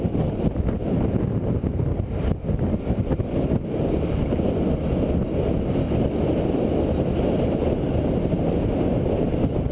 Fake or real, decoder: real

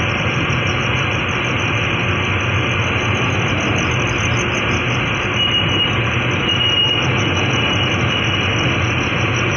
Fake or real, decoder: real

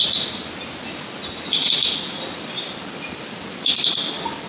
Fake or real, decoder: real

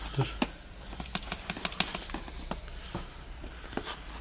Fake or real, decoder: real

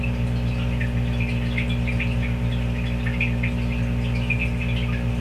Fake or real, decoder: real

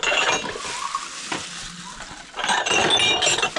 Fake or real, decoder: real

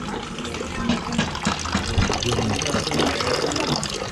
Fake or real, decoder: real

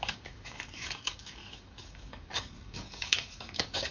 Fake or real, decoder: fake, codec, DAC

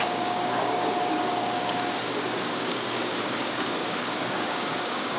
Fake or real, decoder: fake, codec, DAC